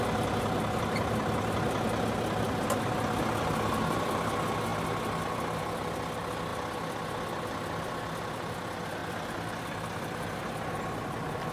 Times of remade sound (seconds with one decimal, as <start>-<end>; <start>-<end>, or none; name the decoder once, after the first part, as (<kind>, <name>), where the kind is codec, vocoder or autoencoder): none